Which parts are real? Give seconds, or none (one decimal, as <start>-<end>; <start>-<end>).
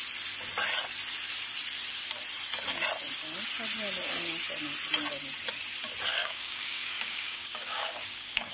0.0-6.2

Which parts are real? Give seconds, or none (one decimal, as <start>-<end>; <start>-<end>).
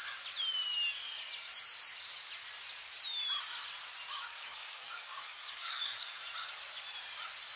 0.0-4.2; 6.2-7.6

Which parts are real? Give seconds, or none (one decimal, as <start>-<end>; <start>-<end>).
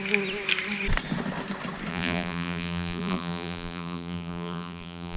0.0-1.9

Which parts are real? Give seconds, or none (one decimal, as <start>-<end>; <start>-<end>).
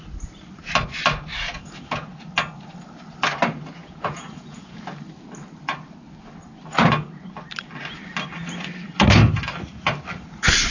0.0-1.5; 2.1-3.8; 5.0-10.7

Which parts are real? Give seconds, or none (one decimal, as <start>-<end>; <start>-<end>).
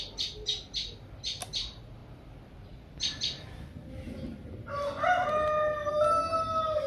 0.0-6.9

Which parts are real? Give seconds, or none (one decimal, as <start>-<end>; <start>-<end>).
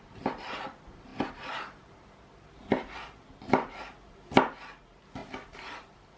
0.0-6.2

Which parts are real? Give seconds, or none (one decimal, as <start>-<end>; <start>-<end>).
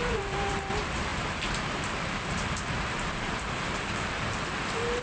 none